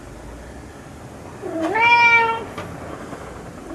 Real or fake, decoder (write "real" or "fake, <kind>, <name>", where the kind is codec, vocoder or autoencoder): real